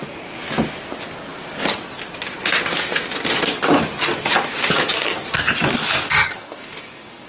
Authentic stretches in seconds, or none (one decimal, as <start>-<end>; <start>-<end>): 0.0-6.2